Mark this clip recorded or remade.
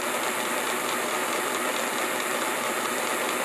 recorded